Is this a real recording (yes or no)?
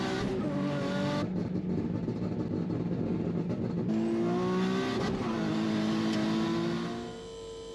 yes